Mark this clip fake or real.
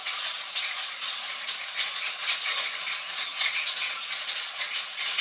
fake